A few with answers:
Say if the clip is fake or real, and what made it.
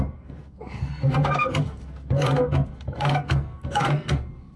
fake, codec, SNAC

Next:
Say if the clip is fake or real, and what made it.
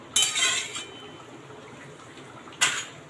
real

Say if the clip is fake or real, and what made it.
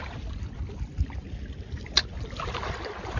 real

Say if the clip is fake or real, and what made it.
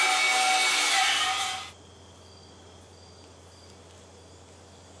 real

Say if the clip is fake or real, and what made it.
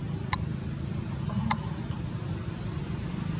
real